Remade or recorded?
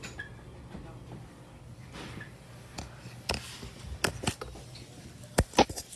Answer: recorded